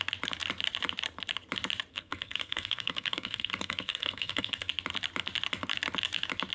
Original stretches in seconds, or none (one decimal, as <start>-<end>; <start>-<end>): 0.0-1.9; 4.7-6.5